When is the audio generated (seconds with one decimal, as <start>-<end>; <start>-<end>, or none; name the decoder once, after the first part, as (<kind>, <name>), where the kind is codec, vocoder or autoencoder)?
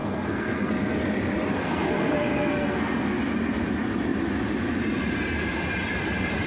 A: 0.0-0.7 (codec, SNAC); 1.6-3.2